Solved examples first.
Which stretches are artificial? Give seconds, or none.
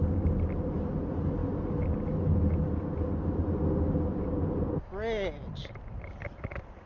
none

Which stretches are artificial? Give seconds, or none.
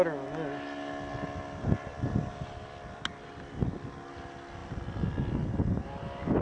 none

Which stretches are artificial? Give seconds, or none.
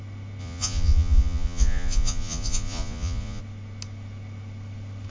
0.4-3.4 (vocoder, Vocos)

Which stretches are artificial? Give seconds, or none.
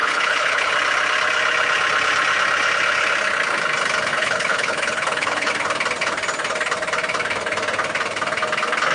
0.0-0.7 (codec, HILCodec); 4.1-5.5